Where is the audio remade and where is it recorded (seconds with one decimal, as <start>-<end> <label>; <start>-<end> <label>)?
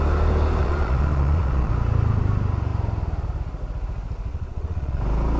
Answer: 0.0-0.6 recorded; 0.6-1.7 remade; 1.7-4.3 recorded; 4.3-5.0 remade; 5.0-5.4 recorded